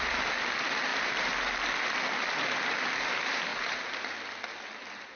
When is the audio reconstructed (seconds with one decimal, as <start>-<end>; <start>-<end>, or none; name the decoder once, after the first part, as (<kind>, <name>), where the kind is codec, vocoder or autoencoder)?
none